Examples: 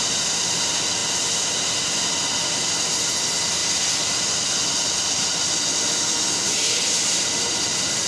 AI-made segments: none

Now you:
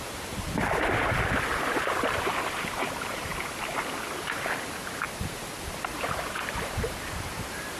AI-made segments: 0.0-0.6; 1.7-3.3; 5.7-7.8

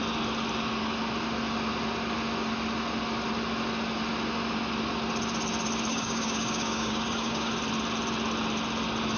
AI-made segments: 5.9-7.5